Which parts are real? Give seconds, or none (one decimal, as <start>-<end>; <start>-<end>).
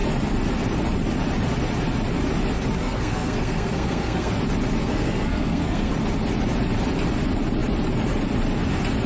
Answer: 0.0-2.8; 4.3-4.8; 5.9-9.1